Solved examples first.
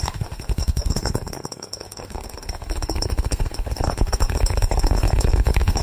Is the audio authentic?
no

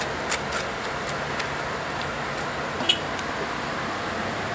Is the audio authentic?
yes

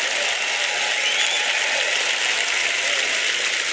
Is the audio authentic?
yes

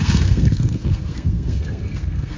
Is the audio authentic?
no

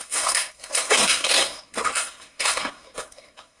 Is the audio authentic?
no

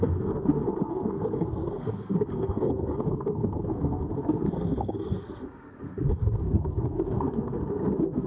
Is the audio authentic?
no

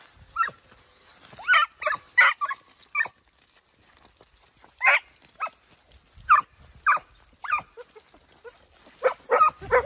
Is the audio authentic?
yes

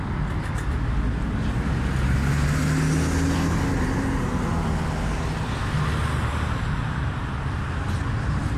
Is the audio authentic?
yes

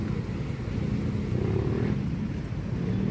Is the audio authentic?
yes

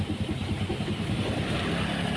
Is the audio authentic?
yes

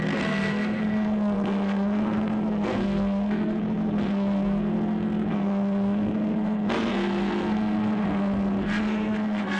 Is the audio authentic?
no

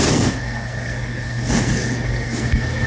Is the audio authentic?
no